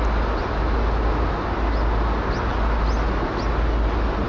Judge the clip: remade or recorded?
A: recorded